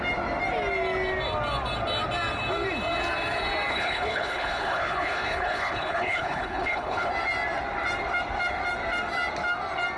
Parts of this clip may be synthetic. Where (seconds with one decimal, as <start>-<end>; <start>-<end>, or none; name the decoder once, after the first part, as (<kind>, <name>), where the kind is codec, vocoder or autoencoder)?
3.7-7.1 (codec, HILCodec)